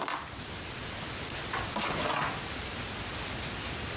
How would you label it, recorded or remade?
recorded